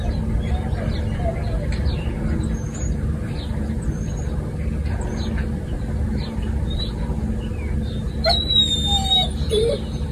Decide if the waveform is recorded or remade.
recorded